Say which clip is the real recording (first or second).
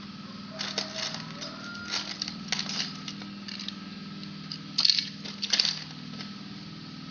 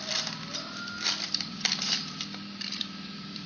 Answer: first